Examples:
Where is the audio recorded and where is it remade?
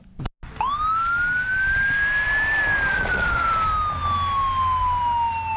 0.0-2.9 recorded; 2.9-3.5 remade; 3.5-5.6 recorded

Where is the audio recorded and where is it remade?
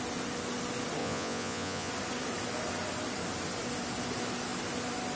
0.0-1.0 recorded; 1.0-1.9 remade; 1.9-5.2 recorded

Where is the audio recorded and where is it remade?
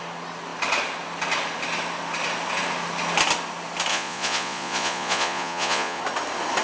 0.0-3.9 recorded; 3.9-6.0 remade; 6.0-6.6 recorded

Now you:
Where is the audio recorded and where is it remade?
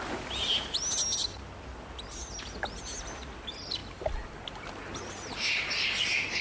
0.0-6.4 recorded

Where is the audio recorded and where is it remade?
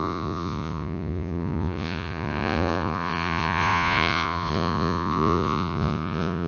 0.0-6.5 remade